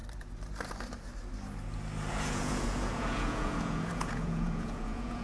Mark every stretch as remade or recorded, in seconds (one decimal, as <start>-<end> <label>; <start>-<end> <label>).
0.0-2.1 recorded; 2.1-5.2 remade